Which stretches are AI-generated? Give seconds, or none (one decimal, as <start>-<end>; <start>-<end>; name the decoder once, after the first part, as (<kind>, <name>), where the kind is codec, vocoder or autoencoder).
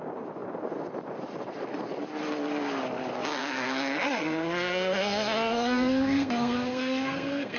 3.4-7.6 (codec, SNAC)